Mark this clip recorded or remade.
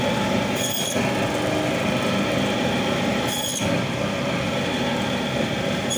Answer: recorded